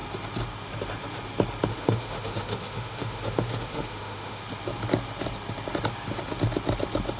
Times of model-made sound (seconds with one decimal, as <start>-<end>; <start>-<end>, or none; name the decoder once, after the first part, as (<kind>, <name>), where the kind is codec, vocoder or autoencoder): 1.7-4.4 (autoencoder, DAC-VAE)